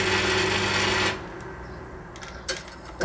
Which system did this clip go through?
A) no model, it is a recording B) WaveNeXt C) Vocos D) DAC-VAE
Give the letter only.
A